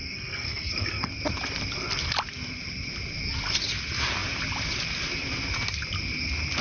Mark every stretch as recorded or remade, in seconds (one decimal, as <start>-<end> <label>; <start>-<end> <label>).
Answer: 0.0-1.1 remade; 1.1-6.6 recorded